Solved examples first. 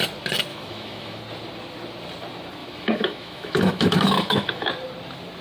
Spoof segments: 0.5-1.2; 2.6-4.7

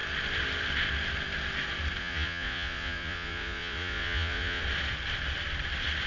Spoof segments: 2.0-4.6

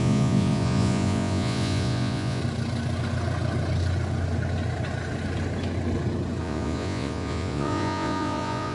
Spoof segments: 0.0-2.4; 6.4-8.7

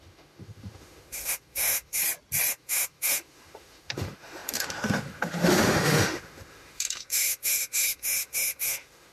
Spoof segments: 0.0-2.0; 2.5-9.1